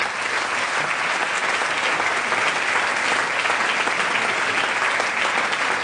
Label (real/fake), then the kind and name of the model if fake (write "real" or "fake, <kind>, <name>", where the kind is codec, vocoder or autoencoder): real